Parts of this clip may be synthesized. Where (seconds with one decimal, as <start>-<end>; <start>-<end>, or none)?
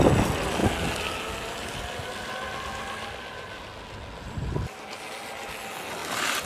none